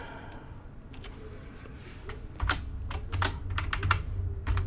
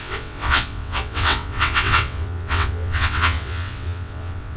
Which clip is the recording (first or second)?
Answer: first